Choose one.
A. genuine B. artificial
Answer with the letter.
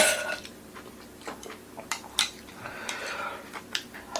A